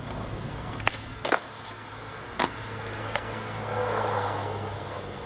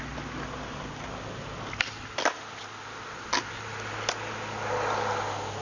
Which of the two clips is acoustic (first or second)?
second